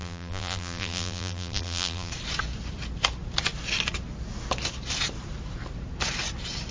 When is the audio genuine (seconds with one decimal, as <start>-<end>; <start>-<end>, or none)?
2.1-6.7